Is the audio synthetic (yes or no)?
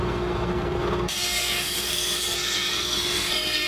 yes